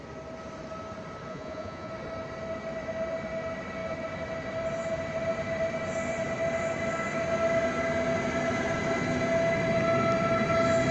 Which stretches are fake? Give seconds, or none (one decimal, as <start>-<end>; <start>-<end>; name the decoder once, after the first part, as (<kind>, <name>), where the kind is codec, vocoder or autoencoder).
1.3-1.9 (vocoder, Vocos)